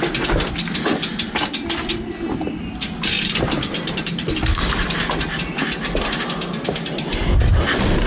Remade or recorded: recorded